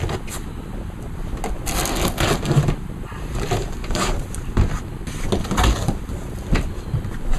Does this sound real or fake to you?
real